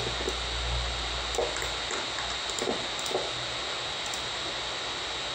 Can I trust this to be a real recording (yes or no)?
yes